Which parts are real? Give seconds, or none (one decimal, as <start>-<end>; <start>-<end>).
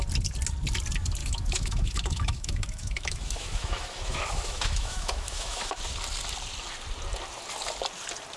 0.0-1.2; 5.8-8.4